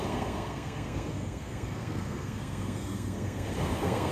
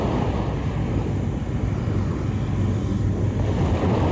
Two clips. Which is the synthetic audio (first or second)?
first